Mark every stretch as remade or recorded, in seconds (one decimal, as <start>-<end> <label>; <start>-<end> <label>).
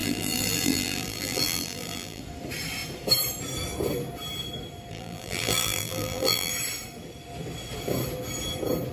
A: 0.0-2.2 remade; 2.2-4.9 recorded; 4.9-6.5 remade; 6.5-8.9 recorded